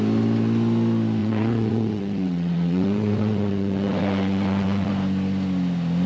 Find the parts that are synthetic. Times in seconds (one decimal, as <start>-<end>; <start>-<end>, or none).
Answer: 1.2-4.9